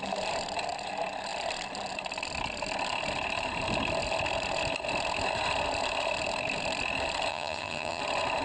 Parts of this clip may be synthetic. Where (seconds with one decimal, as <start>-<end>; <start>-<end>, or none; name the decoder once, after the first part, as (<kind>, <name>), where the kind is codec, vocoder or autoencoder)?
7.3-8.0 (vocoder, HiFi-GAN)